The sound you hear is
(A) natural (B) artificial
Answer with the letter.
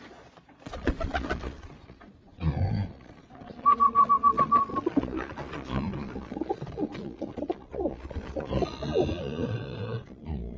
B